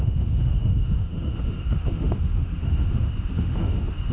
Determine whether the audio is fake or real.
fake